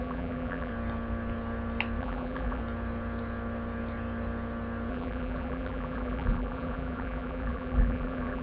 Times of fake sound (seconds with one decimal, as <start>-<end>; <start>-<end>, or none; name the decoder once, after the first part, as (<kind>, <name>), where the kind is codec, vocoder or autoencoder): 0.0-0.7 (vocoder, BigVGAN v2); 2.0-2.6; 4.9-8.4